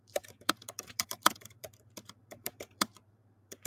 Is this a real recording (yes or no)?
no